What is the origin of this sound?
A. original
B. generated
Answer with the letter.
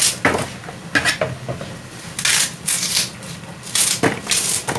A